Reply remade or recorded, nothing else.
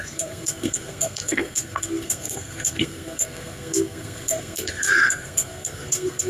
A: remade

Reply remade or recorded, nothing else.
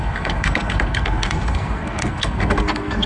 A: remade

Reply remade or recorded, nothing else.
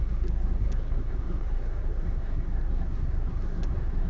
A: remade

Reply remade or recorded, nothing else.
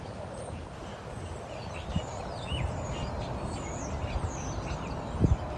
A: recorded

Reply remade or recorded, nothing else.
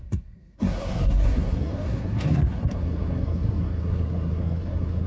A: remade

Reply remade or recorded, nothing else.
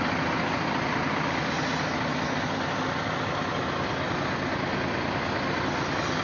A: recorded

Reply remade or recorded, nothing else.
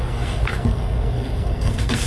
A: remade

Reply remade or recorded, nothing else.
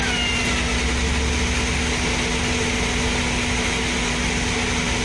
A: recorded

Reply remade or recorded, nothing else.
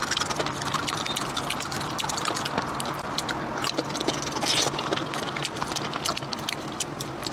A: recorded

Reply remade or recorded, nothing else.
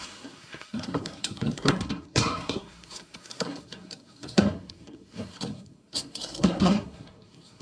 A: remade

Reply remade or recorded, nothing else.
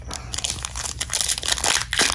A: recorded